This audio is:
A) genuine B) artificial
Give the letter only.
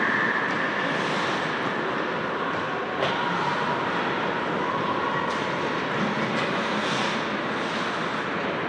A